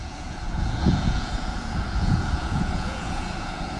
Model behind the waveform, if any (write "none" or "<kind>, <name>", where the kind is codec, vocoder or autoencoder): vocoder, Vocos